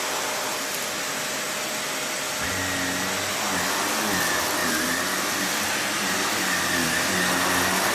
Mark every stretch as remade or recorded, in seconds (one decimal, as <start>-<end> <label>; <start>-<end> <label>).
0.0-7.9 recorded